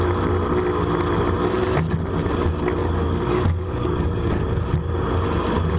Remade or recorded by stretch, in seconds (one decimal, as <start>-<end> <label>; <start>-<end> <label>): 0.0-2.8 recorded; 2.8-4.3 remade; 4.3-5.8 recorded